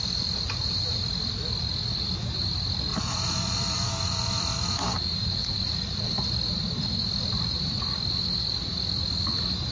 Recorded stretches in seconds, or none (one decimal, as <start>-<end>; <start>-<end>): 0.0-5.0; 6.1-9.7